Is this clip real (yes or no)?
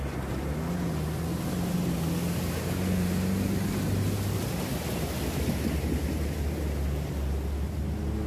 yes